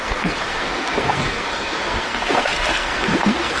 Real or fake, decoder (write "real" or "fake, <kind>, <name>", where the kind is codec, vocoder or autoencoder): fake, codec, SNAC